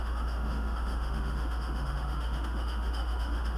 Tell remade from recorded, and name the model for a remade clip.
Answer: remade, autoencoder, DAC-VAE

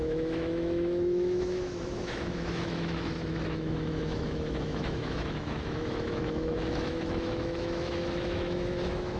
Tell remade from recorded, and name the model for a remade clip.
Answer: remade, autoencoder, DAC-VAE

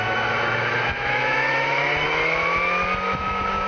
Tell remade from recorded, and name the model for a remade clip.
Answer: remade, autoencoder, DAC-VAE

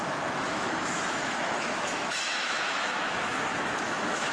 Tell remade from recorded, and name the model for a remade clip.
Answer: remade, autoencoder, DAC-VAE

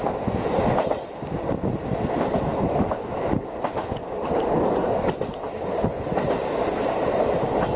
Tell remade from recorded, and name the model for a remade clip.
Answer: recorded